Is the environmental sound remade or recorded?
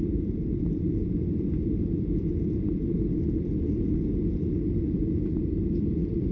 recorded